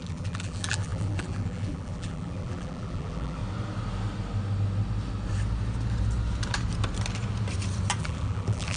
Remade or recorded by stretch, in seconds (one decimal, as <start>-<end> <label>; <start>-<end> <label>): 0.0-3.4 remade; 3.4-8.0 recorded; 8.0-8.8 remade

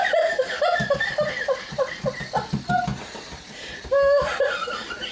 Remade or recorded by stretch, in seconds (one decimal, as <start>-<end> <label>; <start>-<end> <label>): 0.0-2.0 remade; 2.0-2.9 recorded; 2.9-4.5 remade; 4.5-5.1 recorded

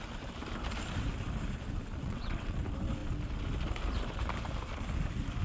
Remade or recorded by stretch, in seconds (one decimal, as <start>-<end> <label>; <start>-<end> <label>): 0.0-2.0 recorded; 2.0-2.6 remade; 2.6-5.4 recorded

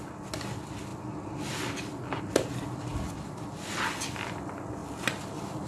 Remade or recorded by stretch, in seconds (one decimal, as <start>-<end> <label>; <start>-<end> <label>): 0.0-5.7 recorded